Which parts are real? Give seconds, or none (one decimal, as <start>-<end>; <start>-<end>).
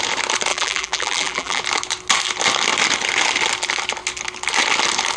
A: 0.0-0.5; 1.6-5.2